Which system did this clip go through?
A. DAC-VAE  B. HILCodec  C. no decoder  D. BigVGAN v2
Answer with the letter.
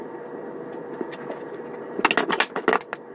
C